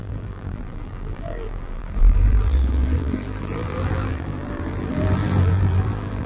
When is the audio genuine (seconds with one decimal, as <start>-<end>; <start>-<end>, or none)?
none